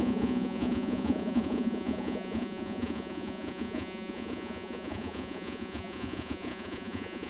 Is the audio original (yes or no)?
no